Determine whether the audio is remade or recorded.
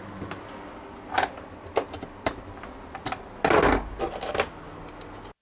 recorded